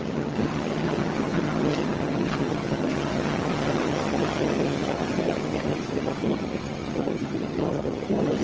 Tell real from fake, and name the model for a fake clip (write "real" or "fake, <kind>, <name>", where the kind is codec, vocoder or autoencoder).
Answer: fake, vocoder, HiFi-GAN